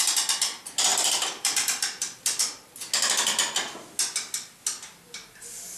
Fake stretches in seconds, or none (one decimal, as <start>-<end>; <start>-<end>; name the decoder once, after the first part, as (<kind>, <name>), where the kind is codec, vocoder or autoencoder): 0.9-2.4 (vocoder, BigVGAN v2)